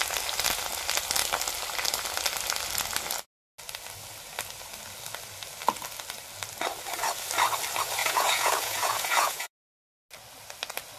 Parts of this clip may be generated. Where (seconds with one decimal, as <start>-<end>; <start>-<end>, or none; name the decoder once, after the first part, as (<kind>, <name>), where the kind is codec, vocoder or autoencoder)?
8.0-9.5 (vocoder, Vocos)